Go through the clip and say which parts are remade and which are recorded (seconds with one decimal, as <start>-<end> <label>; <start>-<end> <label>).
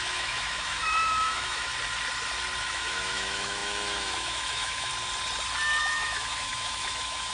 0.0-1.7 remade; 1.7-2.6 recorded; 2.6-4.9 remade; 4.9-5.8 recorded; 5.8-7.3 remade